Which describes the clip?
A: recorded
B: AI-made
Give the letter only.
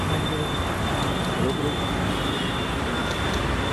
A